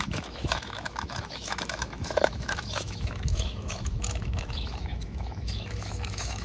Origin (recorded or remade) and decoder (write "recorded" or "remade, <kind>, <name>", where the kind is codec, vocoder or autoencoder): remade, autoencoder, DAC-VAE